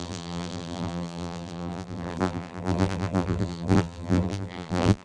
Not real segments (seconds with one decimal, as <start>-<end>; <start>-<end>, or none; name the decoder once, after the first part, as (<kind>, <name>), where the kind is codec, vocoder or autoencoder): 0.0-5.0 (vocoder, BigVGAN v2)